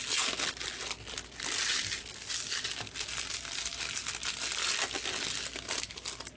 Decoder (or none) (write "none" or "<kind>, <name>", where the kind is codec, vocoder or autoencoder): none